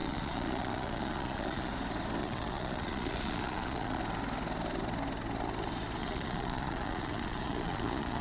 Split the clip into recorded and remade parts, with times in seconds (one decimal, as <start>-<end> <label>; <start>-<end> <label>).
0.0-1.7 remade; 1.7-2.2 recorded; 2.2-4.0 remade; 4.0-6.0 recorded; 6.0-8.2 remade